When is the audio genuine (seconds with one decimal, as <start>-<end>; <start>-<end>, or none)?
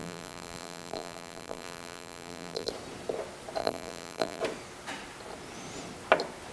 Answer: 2.7-3.6; 4.4-6.5